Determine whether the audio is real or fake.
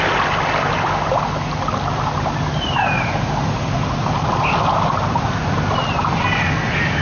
real